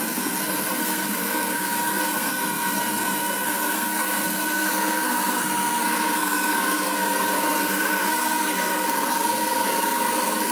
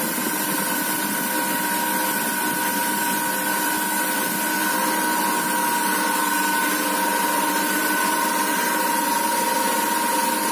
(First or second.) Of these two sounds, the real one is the second